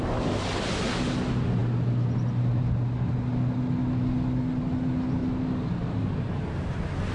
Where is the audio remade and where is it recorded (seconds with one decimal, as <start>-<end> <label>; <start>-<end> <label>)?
0.0-7.1 recorded